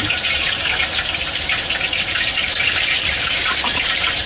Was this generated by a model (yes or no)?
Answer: yes